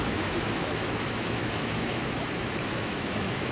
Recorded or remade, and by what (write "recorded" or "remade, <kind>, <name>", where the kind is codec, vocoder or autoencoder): remade, autoencoder, DAC-VAE